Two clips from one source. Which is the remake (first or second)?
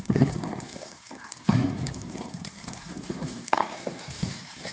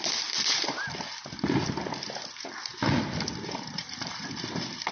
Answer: first